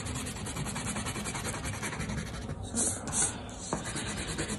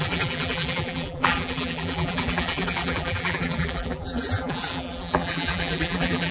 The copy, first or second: second